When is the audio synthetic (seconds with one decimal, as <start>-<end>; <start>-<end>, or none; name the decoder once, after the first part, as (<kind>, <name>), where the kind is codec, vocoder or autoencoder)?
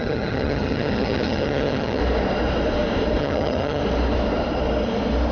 0.0-2.0 (vocoder, HiFi-GAN); 3.2-3.8